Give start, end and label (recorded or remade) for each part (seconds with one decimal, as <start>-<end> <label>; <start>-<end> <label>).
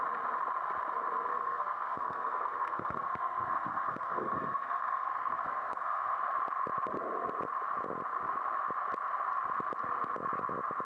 0.0-1.3 recorded; 1.3-6.2 remade; 6.2-10.8 recorded